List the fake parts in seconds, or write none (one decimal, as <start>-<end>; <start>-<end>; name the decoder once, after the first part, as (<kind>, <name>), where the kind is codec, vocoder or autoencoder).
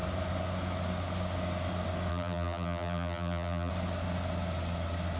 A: 2.1-3.7 (vocoder, BigVGAN v2)